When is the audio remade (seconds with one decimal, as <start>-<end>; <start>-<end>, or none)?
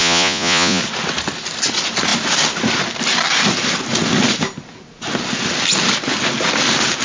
0.0-0.8